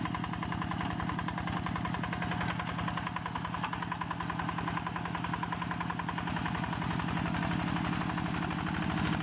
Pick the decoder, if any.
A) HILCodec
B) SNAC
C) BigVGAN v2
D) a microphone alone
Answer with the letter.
D